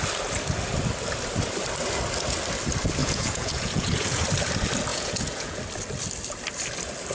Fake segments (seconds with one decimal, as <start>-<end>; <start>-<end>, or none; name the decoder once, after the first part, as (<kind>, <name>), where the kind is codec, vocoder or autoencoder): 3.0-4.2 (vocoder, Vocos); 4.9-5.6